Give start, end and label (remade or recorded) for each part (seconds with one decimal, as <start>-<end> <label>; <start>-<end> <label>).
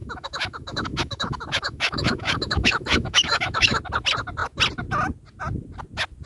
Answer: 0.0-3.8 remade; 3.8-6.3 recorded